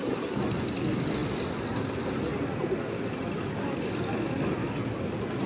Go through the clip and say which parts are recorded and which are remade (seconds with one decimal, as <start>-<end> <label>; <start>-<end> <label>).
0.0-5.5 recorded